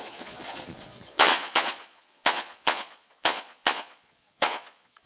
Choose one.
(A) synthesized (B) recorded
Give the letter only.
A